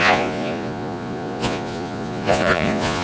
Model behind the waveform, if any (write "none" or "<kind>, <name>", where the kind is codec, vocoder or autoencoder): vocoder, Vocos